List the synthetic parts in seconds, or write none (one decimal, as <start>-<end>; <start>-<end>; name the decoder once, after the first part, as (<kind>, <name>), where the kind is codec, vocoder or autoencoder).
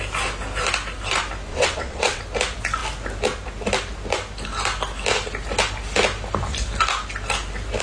1.5-2.2 (vocoder, WaveNeXt)